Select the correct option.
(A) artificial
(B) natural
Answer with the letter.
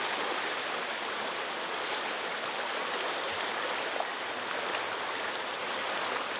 B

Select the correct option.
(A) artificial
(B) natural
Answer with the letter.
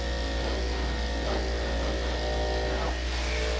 B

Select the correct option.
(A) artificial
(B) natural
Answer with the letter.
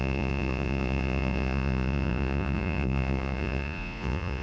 A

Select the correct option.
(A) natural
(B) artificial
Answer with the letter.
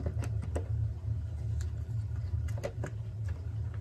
A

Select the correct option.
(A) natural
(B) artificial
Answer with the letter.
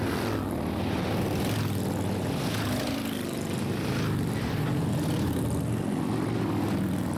A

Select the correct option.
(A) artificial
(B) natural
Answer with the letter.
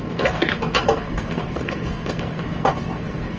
A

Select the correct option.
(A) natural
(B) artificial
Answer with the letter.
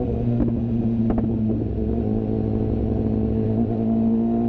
A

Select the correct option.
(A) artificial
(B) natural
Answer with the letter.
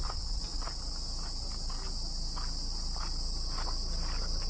B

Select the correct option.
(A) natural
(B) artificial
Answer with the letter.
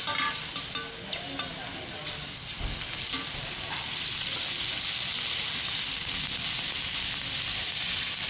A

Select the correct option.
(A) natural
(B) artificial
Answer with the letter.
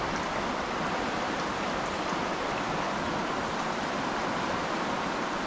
A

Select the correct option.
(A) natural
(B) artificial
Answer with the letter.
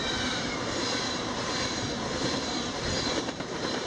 B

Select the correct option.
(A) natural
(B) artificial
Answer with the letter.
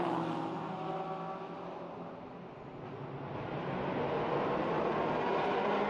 A